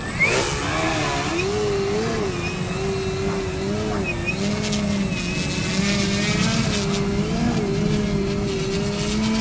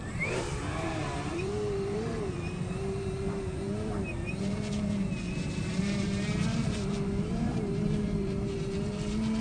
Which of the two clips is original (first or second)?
first